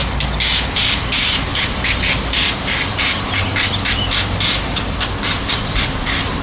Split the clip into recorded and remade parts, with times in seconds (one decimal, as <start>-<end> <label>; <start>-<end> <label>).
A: 0.0-1.0 recorded; 1.0-6.4 remade